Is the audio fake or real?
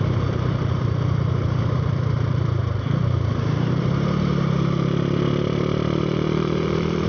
fake